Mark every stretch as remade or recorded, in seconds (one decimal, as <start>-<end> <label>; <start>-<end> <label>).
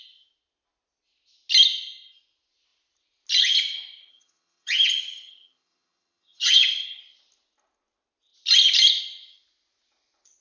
0.0-4.1 recorded; 4.1-7.0 remade; 7.0-10.4 recorded